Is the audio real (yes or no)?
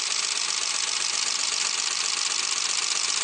yes